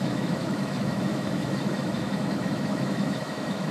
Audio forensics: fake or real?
fake